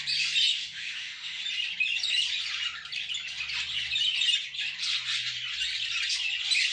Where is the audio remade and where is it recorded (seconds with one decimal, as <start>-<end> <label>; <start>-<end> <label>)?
0.0-0.5 recorded; 0.5-1.4 remade; 1.4-6.7 recorded